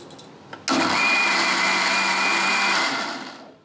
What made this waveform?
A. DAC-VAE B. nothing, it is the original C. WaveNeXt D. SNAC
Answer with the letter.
B